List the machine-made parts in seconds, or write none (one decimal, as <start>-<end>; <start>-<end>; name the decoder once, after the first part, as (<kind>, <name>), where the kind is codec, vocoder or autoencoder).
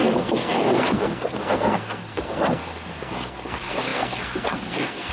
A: 0.0-5.1 (codec, SNAC)